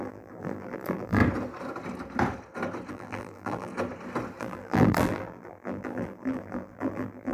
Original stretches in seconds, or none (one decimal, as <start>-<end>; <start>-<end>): 1.2-2.9; 3.7-4.4